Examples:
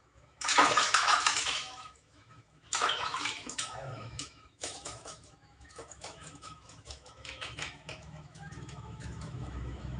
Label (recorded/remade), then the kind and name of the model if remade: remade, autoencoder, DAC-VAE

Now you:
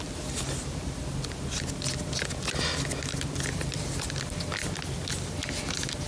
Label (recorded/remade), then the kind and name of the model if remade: recorded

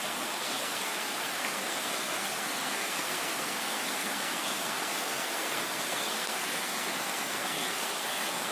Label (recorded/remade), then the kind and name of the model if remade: remade, codec, SNAC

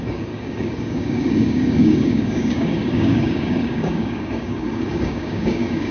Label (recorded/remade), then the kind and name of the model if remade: remade, codec, DAC